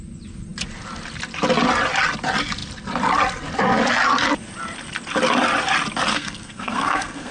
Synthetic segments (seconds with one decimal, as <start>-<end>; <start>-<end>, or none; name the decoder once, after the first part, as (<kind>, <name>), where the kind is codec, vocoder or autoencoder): 6.1-7.3 (codec, SNAC)